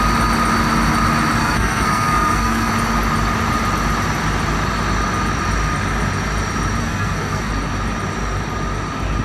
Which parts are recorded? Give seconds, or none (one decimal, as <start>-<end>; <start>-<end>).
0.0-1.4; 2.7-6.8; 7.5-9.2